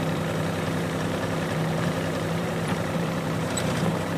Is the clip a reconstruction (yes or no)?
yes